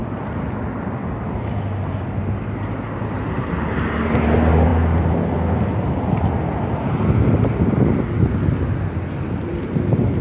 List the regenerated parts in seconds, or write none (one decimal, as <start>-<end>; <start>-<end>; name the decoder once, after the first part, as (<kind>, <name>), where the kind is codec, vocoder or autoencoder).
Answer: none